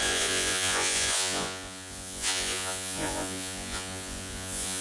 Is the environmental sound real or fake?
fake